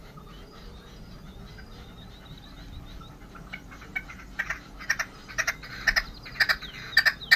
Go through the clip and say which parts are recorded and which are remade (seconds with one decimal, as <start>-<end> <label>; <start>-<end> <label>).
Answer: 0.0-0.9 remade; 0.9-3.9 recorded; 3.9-5.5 remade; 5.5-7.4 recorded

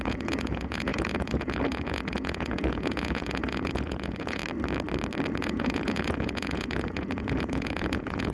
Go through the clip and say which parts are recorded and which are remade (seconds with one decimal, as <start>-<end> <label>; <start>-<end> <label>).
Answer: 0.0-4.4 remade; 4.4-5.4 recorded; 5.4-8.3 remade

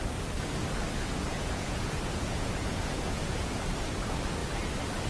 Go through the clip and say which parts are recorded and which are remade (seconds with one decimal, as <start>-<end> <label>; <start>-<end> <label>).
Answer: 0.0-1.3 recorded; 1.3-3.5 remade; 3.5-5.1 recorded

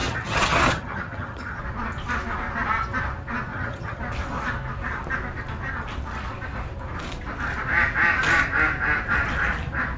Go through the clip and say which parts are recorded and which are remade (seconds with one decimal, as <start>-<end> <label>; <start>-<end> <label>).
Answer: 0.0-1.6 remade; 1.6-3.5 recorded; 3.5-4.0 remade; 4.0-10.0 recorded

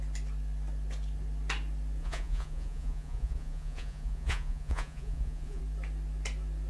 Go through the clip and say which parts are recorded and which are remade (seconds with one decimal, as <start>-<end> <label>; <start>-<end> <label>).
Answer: 0.0-2.0 recorded; 2.0-5.6 remade; 5.6-6.7 recorded

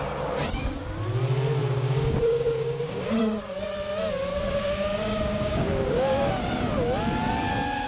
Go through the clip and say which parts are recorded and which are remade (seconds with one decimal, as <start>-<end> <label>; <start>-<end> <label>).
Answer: 0.0-1.6 recorded; 1.6-3.2 remade; 3.2-4.3 recorded; 4.3-6.3 remade; 6.3-7.9 recorded

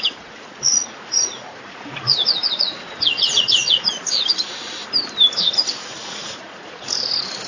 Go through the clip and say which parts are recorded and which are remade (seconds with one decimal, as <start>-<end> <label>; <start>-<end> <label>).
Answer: 0.0-4.8 remade; 4.8-5.4 recorded; 5.4-7.5 remade